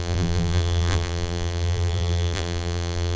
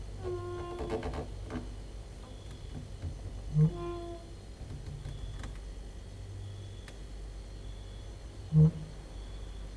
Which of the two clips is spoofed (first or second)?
first